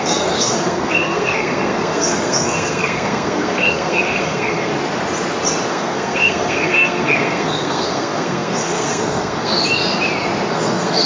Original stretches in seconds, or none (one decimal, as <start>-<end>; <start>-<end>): 4.7-5.7; 9.5-10.5